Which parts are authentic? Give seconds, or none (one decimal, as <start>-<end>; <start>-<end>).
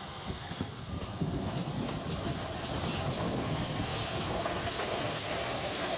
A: 1.7-3.1